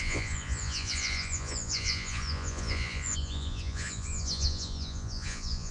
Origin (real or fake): fake